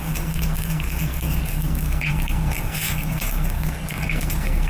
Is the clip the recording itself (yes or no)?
no